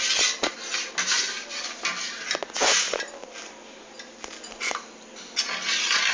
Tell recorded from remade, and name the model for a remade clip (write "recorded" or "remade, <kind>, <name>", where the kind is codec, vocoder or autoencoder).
recorded